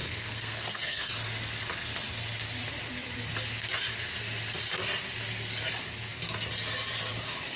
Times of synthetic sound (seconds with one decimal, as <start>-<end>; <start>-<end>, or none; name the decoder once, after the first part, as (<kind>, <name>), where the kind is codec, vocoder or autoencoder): 0.0-1.1 (codec, SNAC)